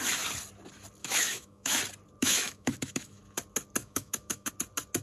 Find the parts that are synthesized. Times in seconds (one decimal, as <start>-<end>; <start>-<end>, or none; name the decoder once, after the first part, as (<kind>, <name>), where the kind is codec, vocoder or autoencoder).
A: 1.0-1.8 (autoencoder, DAC-VAE); 2.2-3.2; 3.8-4.5